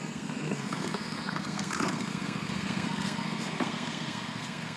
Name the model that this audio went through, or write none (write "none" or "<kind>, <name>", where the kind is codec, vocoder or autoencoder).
codec, SNAC